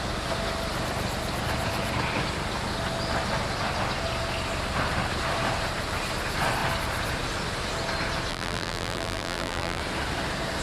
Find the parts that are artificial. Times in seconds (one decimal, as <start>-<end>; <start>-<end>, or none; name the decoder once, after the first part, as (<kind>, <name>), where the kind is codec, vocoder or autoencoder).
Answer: 8.3-9.8 (vocoder, BigVGAN v2)